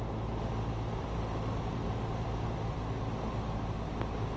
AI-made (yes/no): no